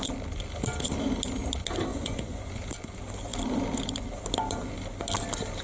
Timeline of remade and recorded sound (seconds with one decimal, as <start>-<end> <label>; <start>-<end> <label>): 0.0-1.9 recorded; 1.9-2.5 remade; 2.5-5.6 recorded